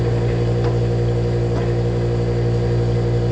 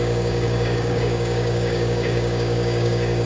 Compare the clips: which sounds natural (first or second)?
first